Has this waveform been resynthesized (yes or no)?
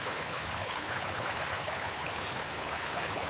yes